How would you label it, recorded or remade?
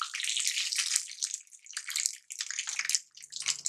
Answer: recorded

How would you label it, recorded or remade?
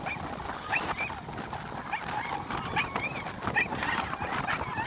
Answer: recorded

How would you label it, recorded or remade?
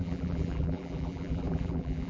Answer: remade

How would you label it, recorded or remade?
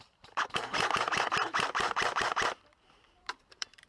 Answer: remade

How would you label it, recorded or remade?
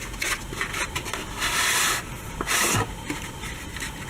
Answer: recorded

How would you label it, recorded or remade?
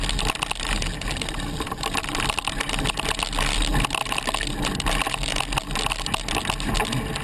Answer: recorded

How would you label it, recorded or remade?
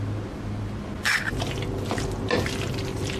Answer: recorded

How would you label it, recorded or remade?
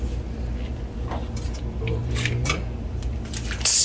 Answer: recorded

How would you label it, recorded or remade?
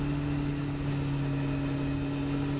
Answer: recorded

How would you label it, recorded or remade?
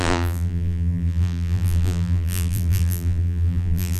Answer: remade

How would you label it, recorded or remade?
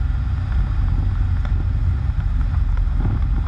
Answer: recorded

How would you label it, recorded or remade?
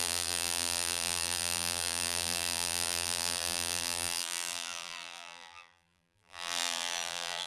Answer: remade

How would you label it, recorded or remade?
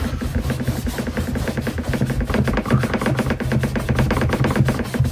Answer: recorded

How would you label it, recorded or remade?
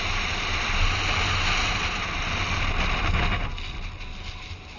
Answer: recorded